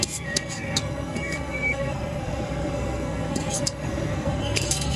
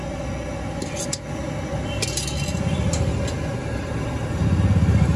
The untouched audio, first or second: second